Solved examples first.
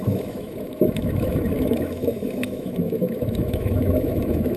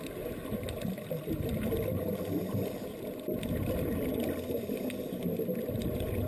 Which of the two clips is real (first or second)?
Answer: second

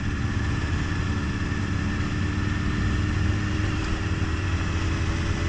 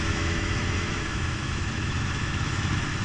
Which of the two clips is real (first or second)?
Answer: first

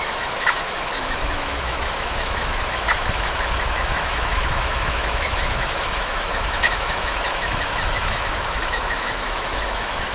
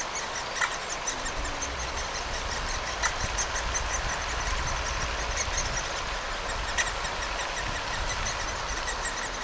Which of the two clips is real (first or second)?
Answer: second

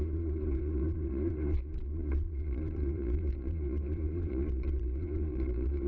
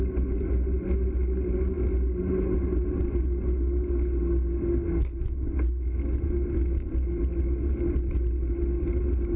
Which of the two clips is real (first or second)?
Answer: second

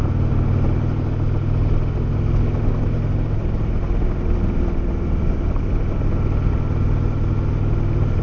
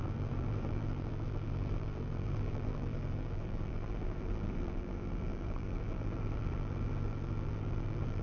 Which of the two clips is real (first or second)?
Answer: first